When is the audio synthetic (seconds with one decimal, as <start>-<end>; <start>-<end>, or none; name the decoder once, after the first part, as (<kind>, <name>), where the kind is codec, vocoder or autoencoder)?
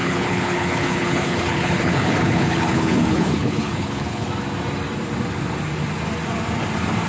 0.0-4.3 (codec, HILCodec)